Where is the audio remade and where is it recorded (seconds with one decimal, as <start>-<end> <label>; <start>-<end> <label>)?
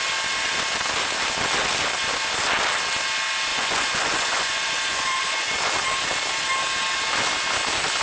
0.0-3.5 recorded; 3.5-5.5 remade; 5.5-8.0 recorded